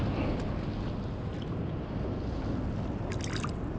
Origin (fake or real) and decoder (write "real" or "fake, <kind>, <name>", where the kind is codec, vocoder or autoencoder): real